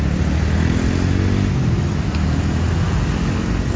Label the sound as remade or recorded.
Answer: recorded